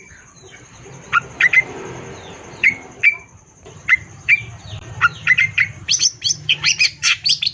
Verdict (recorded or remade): remade